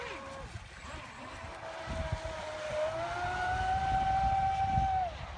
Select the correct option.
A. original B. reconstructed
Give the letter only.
A